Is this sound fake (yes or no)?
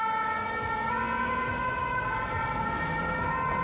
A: no